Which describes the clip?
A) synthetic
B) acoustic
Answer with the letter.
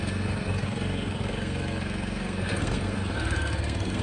A